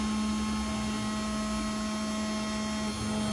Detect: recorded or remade recorded